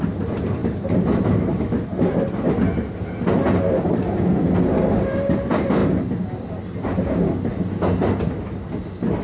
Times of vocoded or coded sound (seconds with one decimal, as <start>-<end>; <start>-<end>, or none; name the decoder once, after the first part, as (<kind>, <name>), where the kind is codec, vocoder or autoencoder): none